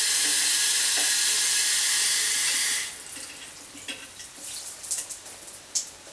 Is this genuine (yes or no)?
yes